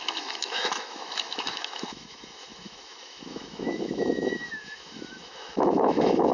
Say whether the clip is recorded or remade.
remade